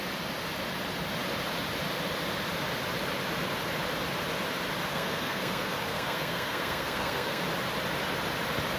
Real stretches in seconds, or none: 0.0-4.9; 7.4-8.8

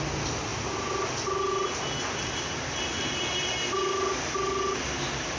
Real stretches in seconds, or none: 0.0-5.4